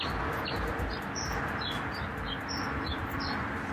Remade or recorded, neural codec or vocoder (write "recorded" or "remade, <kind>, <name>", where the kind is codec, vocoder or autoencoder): recorded